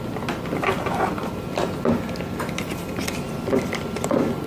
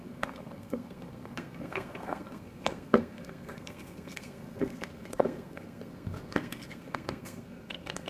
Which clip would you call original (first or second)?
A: first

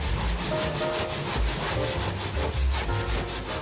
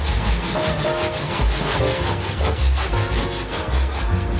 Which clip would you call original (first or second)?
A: first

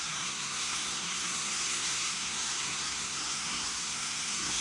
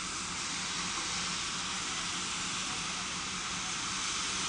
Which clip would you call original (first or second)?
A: second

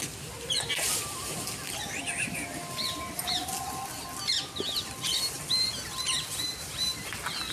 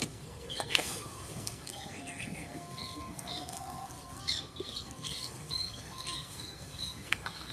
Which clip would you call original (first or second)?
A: first